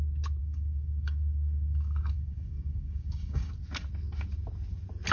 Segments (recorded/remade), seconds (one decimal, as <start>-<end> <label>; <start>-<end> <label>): 0.0-0.4 recorded; 0.4-3.5 remade; 3.5-5.1 recorded